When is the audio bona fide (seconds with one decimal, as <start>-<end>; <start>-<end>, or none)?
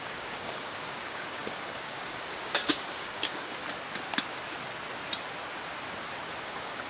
3.6-6.4